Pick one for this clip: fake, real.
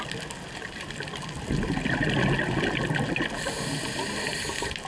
real